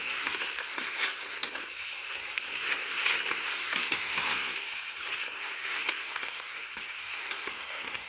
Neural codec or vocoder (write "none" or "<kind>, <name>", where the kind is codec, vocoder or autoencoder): codec, SNAC